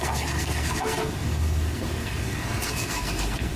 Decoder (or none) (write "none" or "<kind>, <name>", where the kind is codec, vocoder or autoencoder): codec, SNAC